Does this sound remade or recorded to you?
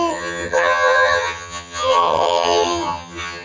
remade